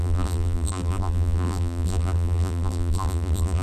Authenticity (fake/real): fake